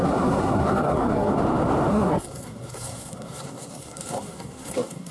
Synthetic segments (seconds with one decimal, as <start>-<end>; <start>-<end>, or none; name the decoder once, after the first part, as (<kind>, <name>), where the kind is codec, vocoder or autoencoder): 0.0-1.3 (codec, SNAC); 1.9-5.1